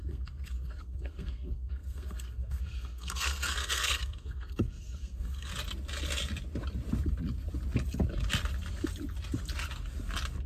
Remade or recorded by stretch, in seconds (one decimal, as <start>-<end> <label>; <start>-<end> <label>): 0.0-5.5 remade; 5.5-10.5 recorded